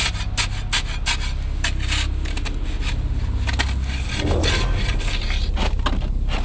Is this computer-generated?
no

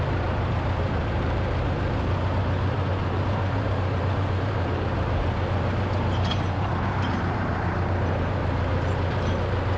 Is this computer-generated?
yes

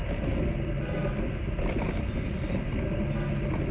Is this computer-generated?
no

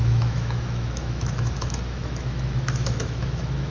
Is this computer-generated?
yes